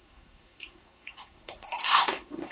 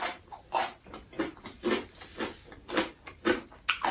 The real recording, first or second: second